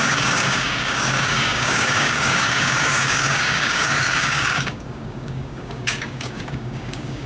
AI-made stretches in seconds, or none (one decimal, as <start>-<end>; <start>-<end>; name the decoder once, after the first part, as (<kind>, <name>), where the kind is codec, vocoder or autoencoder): 0.0-7.3 (codec, DAC)